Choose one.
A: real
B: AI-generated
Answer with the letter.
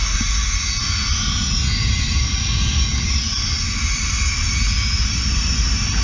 A